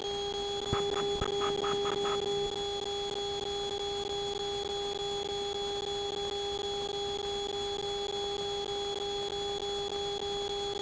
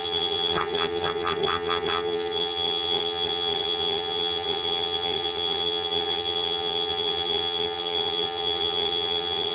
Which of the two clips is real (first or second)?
first